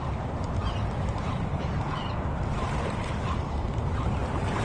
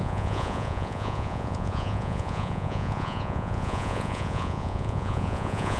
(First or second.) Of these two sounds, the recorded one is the first